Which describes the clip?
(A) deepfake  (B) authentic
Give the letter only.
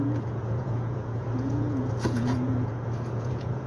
A